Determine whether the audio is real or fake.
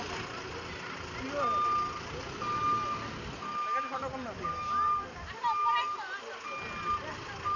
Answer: real